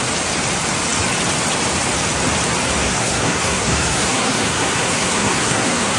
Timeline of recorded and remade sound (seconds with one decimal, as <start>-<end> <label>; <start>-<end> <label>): 0.0-2.8 recorded; 2.8-6.0 remade